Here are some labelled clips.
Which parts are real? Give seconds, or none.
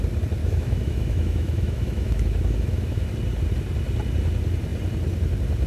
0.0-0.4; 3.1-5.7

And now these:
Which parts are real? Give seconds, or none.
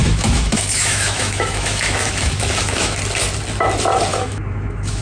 3.0-4.1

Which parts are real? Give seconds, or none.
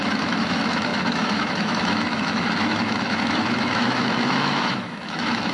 none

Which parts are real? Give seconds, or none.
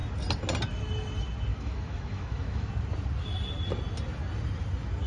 0.0-1.5; 2.7-5.1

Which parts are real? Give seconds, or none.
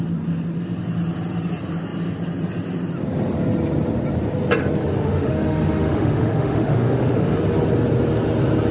0.0-4.8; 7.4-8.7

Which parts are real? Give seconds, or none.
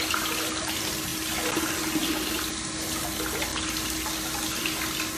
0.0-5.2